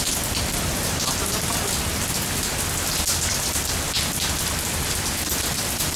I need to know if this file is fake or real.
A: real